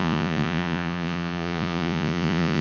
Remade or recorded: remade